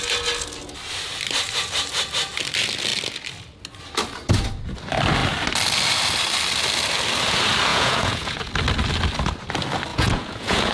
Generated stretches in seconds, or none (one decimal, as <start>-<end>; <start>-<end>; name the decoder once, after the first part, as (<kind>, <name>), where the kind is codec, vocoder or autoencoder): 7.7-8.5 (vocoder, Vocos); 9.9-10.7